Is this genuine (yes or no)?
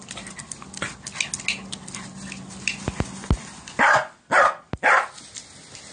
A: yes